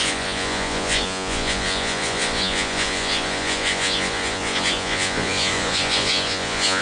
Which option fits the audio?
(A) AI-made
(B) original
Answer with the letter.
A